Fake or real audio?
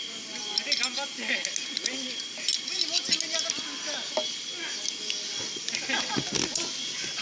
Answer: real